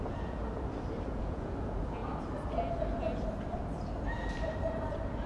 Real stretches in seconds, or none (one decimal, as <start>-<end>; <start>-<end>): 0.4-1.1; 2.0-5.3